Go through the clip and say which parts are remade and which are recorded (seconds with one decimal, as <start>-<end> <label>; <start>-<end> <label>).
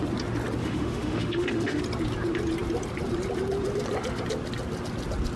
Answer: 0.0-0.6 recorded; 0.6-1.8 remade; 1.8-5.4 recorded